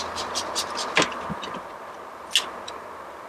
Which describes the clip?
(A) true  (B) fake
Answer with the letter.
A